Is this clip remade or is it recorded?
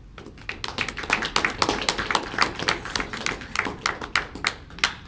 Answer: recorded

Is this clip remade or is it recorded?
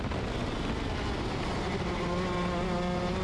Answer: recorded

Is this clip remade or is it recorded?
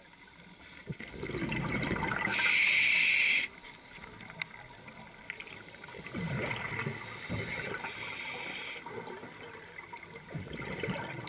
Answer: recorded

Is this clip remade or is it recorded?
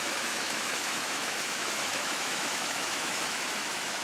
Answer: remade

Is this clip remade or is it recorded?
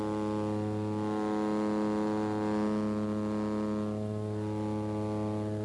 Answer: recorded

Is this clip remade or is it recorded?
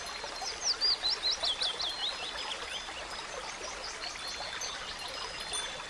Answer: recorded